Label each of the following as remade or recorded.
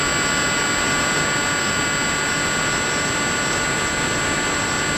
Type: recorded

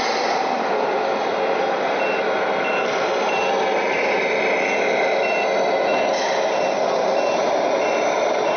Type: recorded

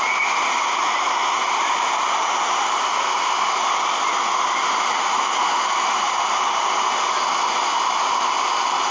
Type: recorded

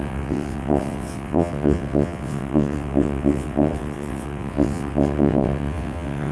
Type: remade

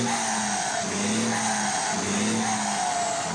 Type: recorded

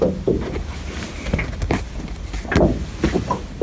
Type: recorded